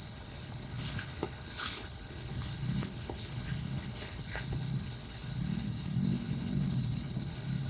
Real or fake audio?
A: fake